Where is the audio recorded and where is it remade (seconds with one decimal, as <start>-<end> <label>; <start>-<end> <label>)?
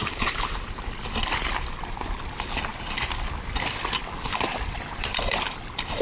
0.0-6.0 recorded